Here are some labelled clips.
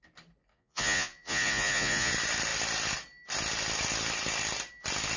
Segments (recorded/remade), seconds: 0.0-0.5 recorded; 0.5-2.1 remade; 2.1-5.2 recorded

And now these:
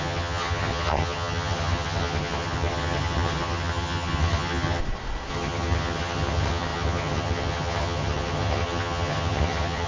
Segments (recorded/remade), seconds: 0.0-4.8 remade; 4.8-5.3 recorded; 5.3-9.9 remade